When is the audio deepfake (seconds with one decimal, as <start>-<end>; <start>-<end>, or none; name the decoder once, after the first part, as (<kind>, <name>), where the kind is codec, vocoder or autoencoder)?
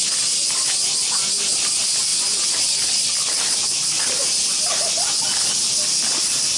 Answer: none